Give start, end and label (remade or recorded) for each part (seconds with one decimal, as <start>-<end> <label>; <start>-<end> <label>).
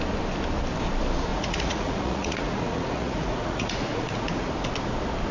0.0-1.3 recorded; 1.3-4.5 remade; 4.5-5.3 recorded